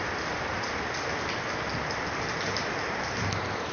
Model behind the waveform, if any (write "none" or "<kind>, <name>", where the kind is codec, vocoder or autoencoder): none